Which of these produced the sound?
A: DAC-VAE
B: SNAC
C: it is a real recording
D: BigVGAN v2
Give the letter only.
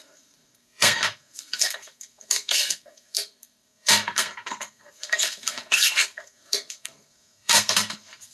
B